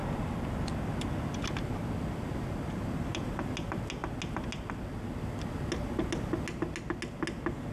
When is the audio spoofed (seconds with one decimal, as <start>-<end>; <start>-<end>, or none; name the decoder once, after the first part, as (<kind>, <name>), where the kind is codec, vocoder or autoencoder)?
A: 0.0-0.5 (vocoder, BigVGAN v2)